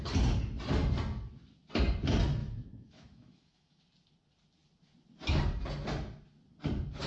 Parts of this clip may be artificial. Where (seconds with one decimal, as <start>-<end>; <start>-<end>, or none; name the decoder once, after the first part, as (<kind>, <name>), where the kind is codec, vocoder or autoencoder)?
2.4-3.8 (autoencoder, DAC-VAE)